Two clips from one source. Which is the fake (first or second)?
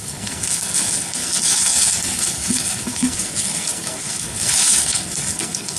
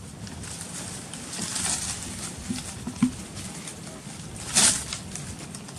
first